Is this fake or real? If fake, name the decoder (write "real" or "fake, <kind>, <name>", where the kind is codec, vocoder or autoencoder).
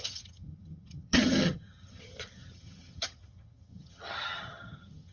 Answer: fake, vocoder, HiFi-GAN